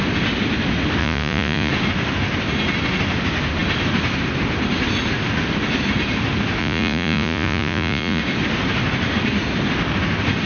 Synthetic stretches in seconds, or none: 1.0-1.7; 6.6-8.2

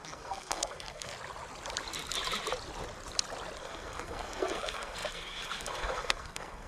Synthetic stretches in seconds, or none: 0.0-1.1; 3.6-6.7

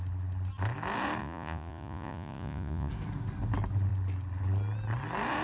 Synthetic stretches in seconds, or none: 1.2-2.9

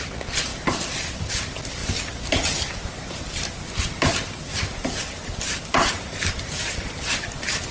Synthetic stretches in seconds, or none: none

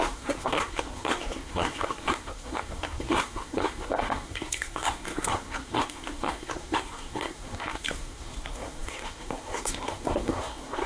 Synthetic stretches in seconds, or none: 0.0-10.9

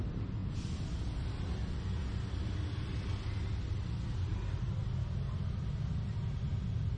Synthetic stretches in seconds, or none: none